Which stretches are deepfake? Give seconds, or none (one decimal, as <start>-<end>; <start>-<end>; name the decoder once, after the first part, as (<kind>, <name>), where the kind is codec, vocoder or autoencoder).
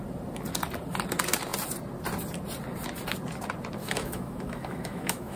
3.8-5.4 (autoencoder, DAC-VAE)